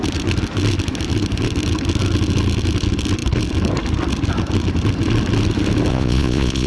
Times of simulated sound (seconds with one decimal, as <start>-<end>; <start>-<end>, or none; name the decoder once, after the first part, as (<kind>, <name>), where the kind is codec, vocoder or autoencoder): 5.9-6.7 (vocoder, Vocos)